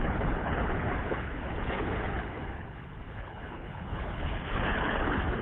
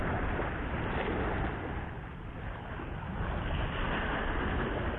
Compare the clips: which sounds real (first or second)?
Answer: second